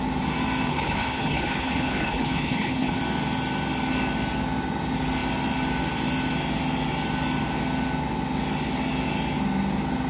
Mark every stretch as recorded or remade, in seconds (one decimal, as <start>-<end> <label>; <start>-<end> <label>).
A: 0.0-0.7 recorded; 0.7-3.0 remade; 3.0-10.1 recorded